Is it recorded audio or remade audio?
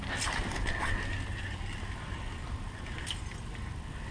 recorded